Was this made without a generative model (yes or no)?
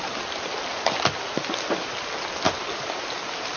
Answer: yes